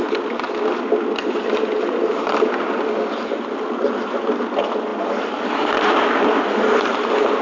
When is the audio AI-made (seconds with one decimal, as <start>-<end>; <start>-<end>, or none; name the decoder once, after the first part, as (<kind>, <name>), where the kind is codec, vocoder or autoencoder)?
none